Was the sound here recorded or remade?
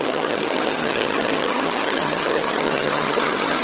remade